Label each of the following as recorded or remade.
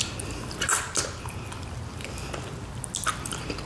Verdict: recorded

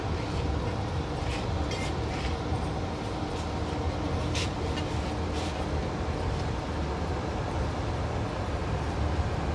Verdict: recorded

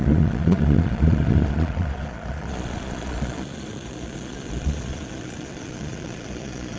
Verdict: remade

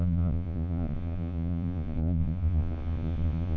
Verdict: remade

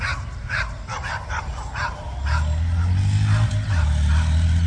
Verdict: recorded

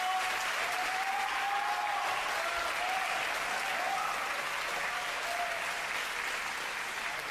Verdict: recorded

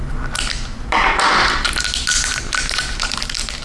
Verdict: recorded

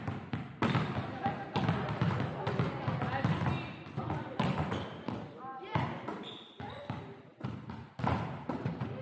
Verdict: recorded